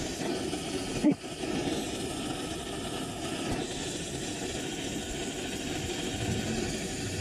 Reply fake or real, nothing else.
real